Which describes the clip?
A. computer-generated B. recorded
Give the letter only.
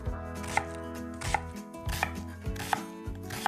B